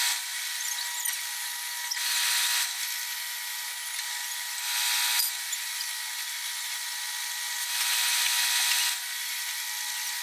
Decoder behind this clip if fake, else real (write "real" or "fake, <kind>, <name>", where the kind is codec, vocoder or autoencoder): real